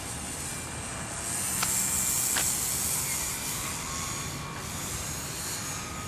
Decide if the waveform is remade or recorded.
recorded